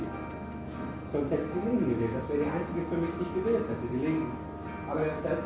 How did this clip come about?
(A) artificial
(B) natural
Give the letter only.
B